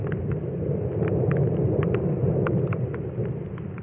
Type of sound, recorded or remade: remade